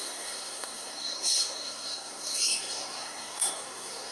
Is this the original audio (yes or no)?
no